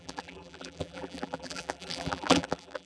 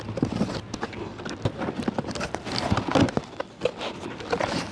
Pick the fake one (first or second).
first